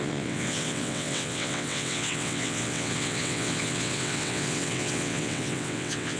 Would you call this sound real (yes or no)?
no